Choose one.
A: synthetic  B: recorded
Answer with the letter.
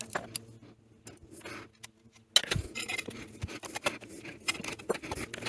B